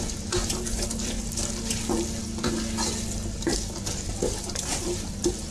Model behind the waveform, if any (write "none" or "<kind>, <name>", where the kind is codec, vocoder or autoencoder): none